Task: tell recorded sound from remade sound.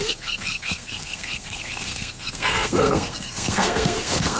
remade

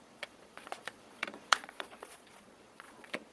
remade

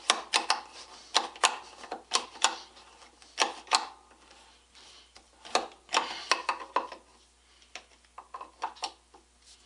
recorded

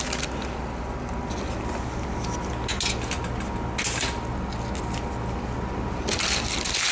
recorded